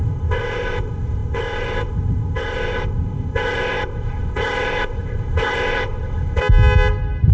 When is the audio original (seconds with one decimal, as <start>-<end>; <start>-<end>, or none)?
6.4-7.3